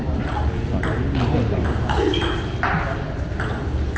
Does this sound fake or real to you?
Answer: real